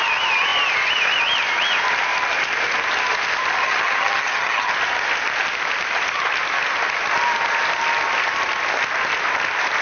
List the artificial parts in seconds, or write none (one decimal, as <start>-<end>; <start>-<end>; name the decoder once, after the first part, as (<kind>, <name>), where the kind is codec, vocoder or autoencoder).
3.6-4.7 (vocoder, HiFi-GAN)